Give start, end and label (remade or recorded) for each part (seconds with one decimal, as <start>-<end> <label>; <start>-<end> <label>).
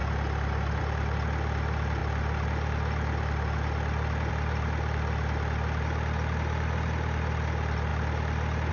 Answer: 0.0-8.7 recorded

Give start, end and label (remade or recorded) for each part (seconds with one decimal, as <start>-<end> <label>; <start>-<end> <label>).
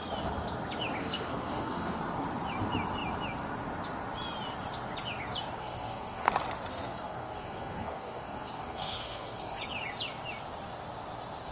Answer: 0.0-1.0 recorded; 1.0-2.0 remade; 2.0-5.6 recorded; 5.6-6.3 remade; 6.3-6.7 recorded; 6.7-9.6 remade; 9.6-11.5 recorded